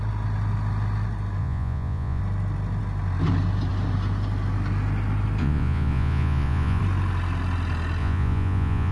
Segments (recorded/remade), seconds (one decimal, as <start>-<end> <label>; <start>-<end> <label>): 0.0-1.4 recorded; 1.4-2.2 remade; 2.2-5.4 recorded; 5.4-6.8 remade; 6.8-8.0 recorded; 8.0-8.9 remade